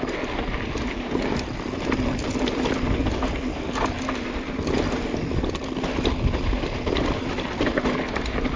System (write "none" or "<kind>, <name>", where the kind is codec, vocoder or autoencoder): none